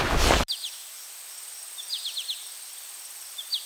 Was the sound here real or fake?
real